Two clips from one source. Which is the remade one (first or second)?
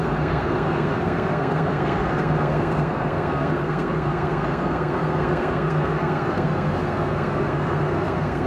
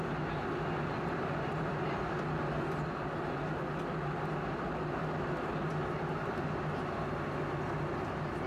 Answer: first